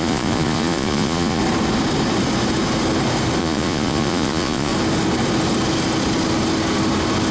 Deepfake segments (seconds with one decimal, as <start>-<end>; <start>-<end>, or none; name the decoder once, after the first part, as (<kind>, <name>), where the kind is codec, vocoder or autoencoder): 0.0-1.4 (vocoder, Vocos); 3.4-4.7